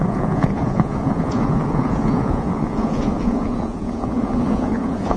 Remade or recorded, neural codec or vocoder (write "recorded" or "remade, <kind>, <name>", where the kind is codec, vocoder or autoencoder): remade, vocoder, Vocos